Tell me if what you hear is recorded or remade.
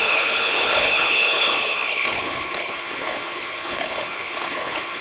remade